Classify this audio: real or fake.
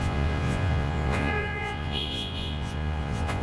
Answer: fake